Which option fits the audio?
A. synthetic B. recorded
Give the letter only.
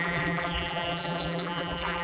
A